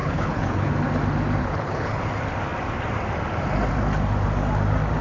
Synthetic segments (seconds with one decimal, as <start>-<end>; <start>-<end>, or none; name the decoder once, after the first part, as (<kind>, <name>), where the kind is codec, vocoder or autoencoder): 0.0-0.7 (codec, HILCodec); 1.4-2.0